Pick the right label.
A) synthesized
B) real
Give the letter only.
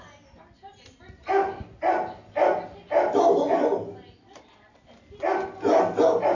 B